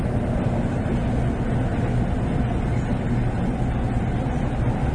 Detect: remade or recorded recorded